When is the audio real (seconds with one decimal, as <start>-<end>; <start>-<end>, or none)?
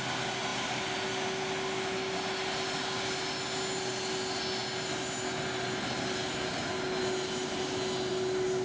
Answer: 0.0-8.6